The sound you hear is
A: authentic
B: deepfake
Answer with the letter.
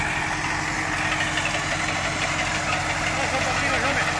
A